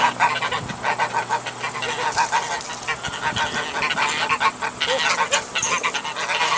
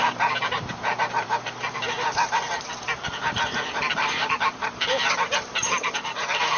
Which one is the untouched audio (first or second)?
first